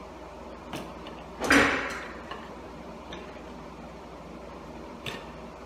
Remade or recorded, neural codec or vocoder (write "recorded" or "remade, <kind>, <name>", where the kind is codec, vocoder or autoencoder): remade, vocoder, BigVGAN v2